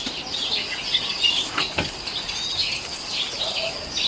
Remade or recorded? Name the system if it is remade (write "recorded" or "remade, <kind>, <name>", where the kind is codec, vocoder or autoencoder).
recorded